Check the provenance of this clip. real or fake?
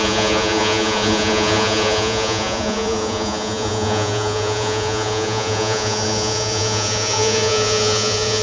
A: fake